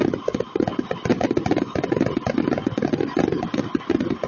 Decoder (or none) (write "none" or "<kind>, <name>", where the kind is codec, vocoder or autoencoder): none